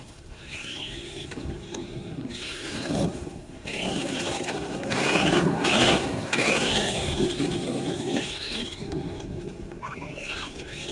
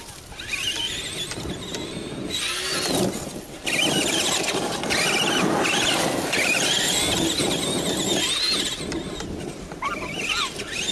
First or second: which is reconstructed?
first